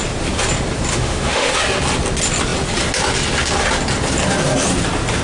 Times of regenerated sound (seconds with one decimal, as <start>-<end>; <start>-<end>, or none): 0.9-1.5